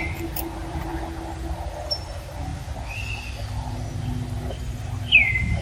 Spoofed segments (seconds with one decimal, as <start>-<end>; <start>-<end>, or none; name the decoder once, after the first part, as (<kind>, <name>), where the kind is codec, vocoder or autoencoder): 0.0-0.9 (vocoder, BigVGAN v2); 1.9-2.5; 4.5-5.6

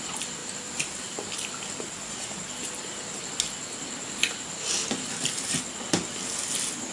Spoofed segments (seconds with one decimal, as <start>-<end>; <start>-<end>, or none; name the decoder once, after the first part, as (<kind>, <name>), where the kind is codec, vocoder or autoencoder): 0.4-3.2 (vocoder, BigVGAN v2)

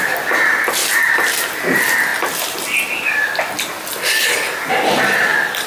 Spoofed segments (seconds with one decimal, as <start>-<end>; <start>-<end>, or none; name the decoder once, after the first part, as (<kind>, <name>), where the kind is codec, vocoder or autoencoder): 0.0-2.1 (vocoder, BigVGAN v2)

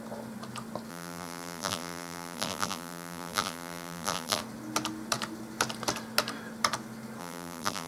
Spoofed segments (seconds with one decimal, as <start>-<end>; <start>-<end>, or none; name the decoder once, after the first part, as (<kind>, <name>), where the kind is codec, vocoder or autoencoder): 0.9-4.4 (vocoder, BigVGAN v2); 7.2-7.9

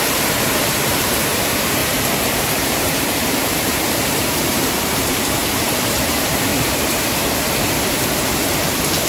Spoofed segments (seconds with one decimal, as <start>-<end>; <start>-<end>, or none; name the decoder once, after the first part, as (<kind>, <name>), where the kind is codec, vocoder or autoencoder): 0.0-8.5 (vocoder, BigVGAN v2)

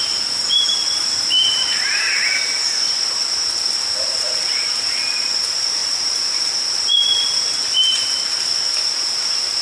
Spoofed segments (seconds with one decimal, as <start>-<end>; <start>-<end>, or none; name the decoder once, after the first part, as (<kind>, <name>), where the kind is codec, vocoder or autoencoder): 0.0-9.6 (vocoder, BigVGAN v2)

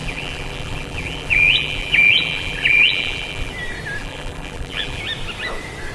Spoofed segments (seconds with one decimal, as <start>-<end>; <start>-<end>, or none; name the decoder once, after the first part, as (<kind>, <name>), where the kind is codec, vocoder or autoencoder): 0.0-3.5 (vocoder, BigVGAN v2); 4.0-5.0